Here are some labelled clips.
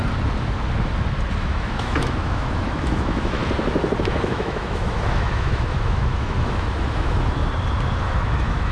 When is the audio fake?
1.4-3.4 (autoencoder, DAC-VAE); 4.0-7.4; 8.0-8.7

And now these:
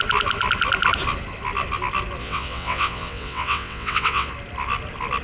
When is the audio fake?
2.2-4.3 (vocoder, WaveNeXt)

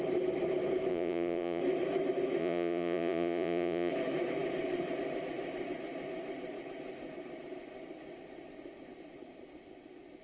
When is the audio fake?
0.9-1.6 (vocoder, Vocos); 2.4-3.9

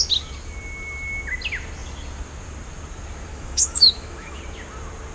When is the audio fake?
3.3-4.4 (autoencoder, DAC-VAE)